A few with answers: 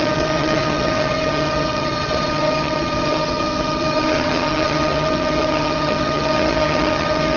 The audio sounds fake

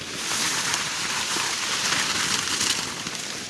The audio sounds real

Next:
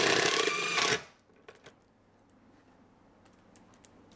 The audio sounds real